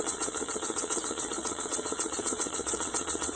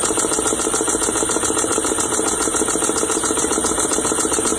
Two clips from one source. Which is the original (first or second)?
second